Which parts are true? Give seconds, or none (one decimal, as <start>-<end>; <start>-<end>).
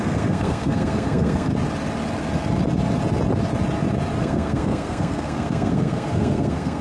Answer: 1.5-4.2